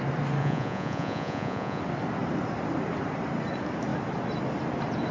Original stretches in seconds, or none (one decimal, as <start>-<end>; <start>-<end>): 0.0-0.4; 1.8-5.1